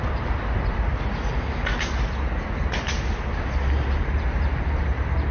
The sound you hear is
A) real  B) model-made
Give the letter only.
A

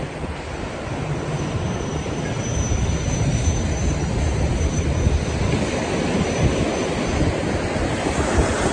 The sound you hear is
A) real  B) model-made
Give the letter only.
A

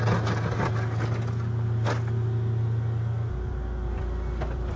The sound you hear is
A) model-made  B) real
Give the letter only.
B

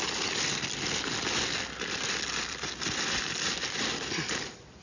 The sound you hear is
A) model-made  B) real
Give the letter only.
B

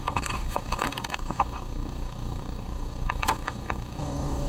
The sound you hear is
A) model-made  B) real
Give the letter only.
A